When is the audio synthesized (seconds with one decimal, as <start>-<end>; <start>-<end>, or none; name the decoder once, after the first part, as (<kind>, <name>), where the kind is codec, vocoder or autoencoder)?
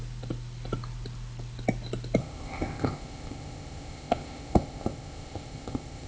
2.2-6.1 (codec, ZipCodec)